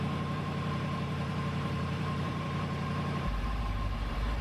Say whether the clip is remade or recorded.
remade